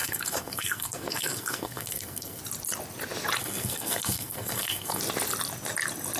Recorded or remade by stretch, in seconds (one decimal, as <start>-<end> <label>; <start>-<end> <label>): 0.0-2.4 remade; 2.4-3.4 recorded; 3.4-5.0 remade; 5.0-6.2 recorded